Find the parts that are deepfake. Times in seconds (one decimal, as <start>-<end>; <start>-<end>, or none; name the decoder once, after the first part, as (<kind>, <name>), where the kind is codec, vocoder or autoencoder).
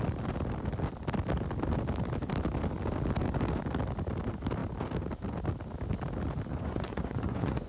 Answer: 6.5-7.7 (vocoder, Vocos)